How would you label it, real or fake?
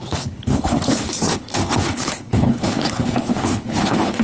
fake